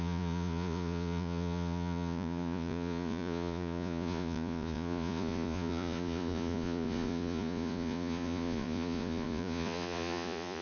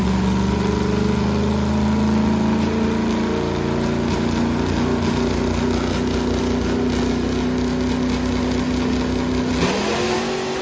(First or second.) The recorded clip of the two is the second